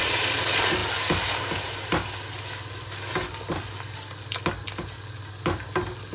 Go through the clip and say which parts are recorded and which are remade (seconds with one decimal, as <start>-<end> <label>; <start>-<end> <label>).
0.0-6.1 recorded